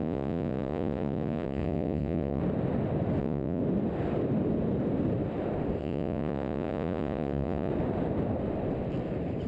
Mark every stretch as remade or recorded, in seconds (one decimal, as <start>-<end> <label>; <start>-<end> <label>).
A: 0.0-2.4 remade; 2.4-3.2 recorded; 3.2-3.6 remade; 3.6-5.8 recorded; 5.8-7.7 remade; 7.7-9.5 recorded